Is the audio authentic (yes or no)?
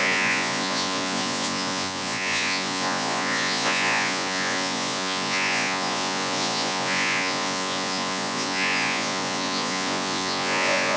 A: no